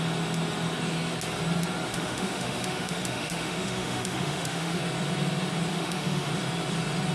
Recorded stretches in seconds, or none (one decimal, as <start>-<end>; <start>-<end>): 0.0-1.9; 4.8-5.7; 6.3-7.1